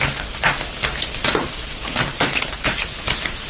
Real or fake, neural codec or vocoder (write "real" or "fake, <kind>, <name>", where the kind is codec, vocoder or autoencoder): real